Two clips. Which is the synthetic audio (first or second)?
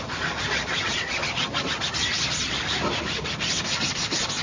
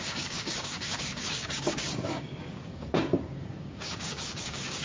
second